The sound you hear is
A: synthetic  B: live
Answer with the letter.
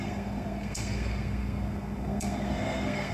A